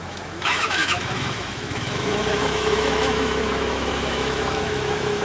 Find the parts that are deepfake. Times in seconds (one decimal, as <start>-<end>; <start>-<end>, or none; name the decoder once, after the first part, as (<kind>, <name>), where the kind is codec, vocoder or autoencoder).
0.0-5.2 (autoencoder, DAC-VAE)